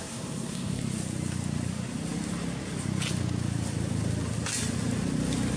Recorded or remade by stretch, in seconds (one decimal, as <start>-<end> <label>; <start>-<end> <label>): 0.0-0.8 remade; 0.8-5.6 recorded